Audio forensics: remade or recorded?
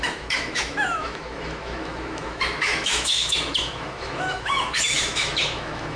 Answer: remade